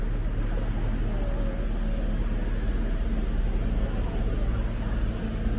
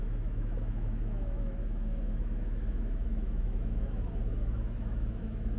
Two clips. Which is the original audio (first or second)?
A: first